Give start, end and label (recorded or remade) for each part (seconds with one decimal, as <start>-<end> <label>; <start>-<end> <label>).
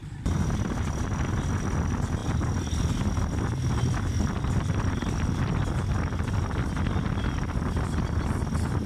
0.0-1.5 remade; 1.5-2.2 recorded; 2.2-5.3 remade; 5.3-8.9 recorded